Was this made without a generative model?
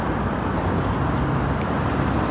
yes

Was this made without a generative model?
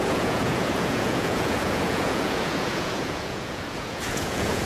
no